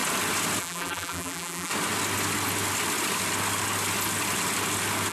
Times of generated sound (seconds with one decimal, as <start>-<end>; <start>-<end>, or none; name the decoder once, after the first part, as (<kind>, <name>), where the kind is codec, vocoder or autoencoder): 0.6-1.7 (vocoder, BigVGAN v2)